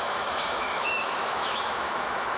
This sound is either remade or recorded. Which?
remade